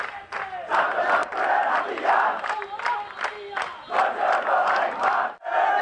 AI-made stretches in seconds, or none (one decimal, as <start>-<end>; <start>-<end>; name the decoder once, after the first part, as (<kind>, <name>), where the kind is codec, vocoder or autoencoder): none